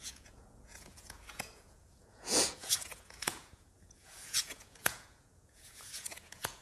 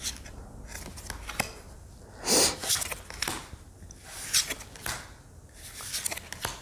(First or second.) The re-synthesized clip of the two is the first